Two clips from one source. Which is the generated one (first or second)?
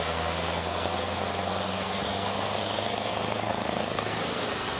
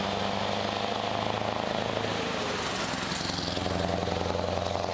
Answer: first